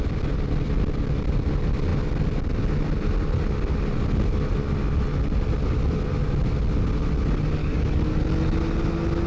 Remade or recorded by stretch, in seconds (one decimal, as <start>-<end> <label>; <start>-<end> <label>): 0.0-7.6 recorded; 7.6-8.2 remade; 8.2-9.3 recorded